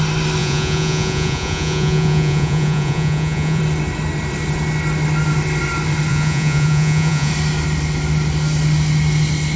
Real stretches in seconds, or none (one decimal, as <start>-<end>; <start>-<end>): 0.0-0.4; 3.6-6.1; 7.3-9.6